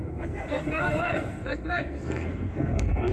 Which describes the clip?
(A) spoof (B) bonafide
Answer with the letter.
A